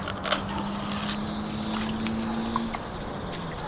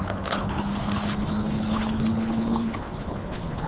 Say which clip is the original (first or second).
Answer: first